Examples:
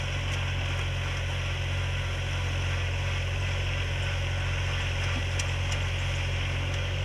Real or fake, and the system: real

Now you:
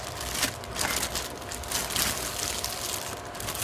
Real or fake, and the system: real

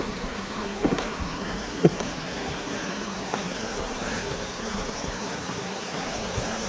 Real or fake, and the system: fake, codec, SNAC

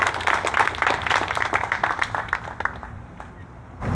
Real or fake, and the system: real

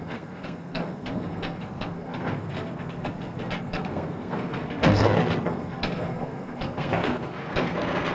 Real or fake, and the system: fake, codec, SNAC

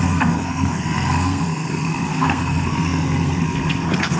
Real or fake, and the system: fake, codec, SNAC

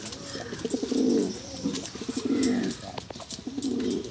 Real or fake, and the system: real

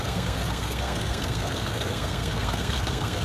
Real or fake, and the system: fake, codec, SNAC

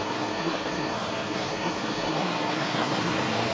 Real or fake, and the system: fake, codec, SNAC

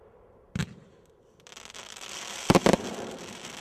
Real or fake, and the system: real